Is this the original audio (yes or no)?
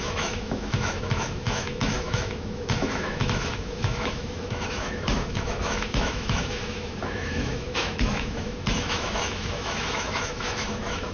no